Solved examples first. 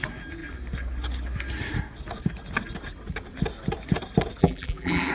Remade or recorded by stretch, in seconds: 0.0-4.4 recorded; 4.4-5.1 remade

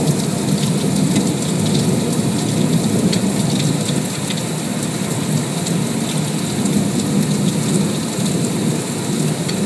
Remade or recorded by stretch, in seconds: 0.0-9.7 recorded

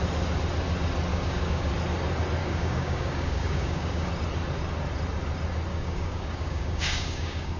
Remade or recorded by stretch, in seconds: 0.0-1.1 recorded; 1.1-1.7 remade; 1.7-2.4 recorded; 2.4-4.1 remade; 4.1-5.7 recorded; 5.7-7.6 remade

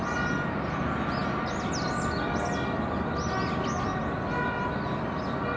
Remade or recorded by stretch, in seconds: 0.0-5.6 recorded

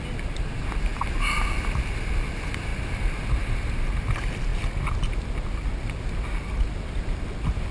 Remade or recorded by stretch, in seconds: 0.0-7.7 recorded

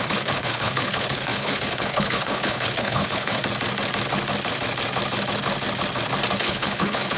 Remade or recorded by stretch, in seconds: 0.0-3.4 remade; 3.4-6.4 recorded; 6.4-7.2 remade

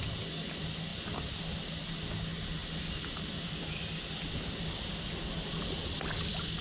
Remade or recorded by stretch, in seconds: 0.0-6.6 recorded